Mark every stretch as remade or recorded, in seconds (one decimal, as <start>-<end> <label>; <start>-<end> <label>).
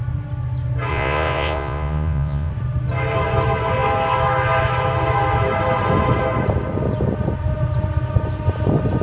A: 0.0-0.9 recorded; 0.9-2.5 remade; 2.5-9.0 recorded